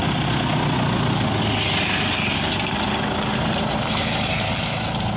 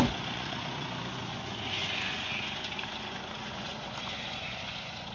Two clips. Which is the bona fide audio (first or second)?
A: first